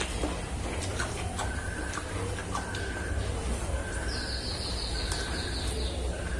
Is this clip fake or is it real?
real